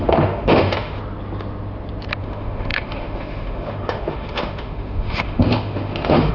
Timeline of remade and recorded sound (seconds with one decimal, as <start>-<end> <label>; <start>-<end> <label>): 0.0-1.0 remade; 1.0-2.2 recorded; 2.2-6.3 remade